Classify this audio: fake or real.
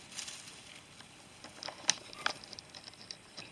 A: real